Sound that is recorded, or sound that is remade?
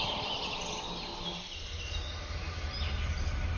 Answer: recorded